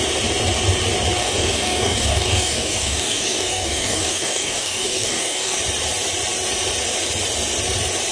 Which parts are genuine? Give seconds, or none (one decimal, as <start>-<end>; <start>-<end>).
0.0-1.2; 5.6-8.1